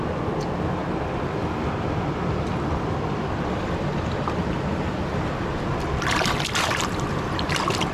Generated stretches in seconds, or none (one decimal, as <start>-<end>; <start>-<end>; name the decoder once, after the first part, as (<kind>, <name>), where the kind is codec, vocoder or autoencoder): none